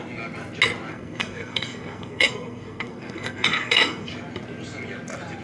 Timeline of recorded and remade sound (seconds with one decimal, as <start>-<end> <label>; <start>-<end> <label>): 0.0-0.9 recorded; 0.9-4.1 remade; 4.1-5.4 recorded